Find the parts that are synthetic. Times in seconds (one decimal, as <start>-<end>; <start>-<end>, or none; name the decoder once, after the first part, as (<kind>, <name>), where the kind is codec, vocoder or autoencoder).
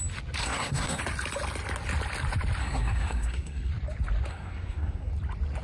0.4-1.0 (codec, SNAC); 2.6-3.7; 4.3-5.1